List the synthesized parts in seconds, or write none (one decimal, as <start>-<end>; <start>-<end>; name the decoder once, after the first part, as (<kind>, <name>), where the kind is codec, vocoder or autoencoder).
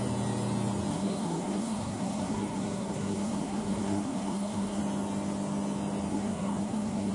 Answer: 0.9-4.8 (codec, SNAC); 6.1-7.1